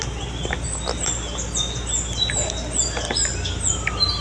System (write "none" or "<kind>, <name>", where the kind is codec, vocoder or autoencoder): none